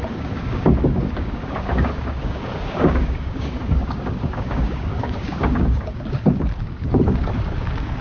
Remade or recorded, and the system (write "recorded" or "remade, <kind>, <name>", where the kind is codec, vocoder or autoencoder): remade, codec, DAC